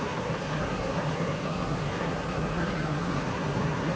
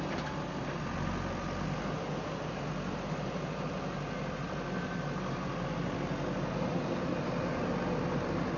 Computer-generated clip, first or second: first